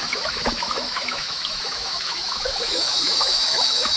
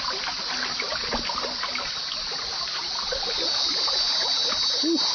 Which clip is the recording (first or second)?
second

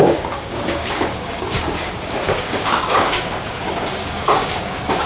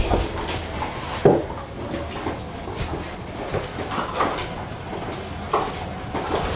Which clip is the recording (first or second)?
second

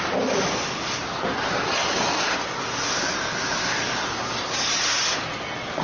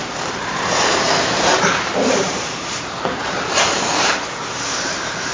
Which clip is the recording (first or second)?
first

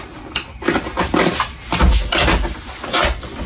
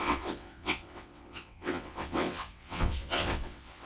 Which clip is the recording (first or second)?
first